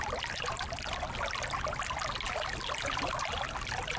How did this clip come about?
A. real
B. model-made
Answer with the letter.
A